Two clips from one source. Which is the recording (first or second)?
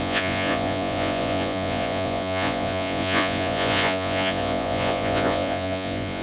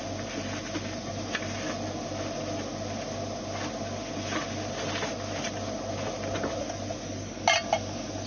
second